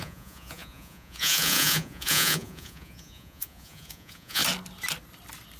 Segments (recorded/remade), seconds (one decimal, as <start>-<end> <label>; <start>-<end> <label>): 0.0-4.4 remade; 4.4-5.6 recorded